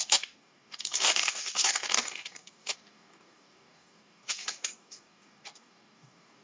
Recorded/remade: remade